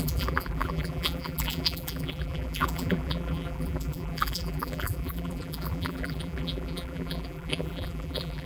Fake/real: fake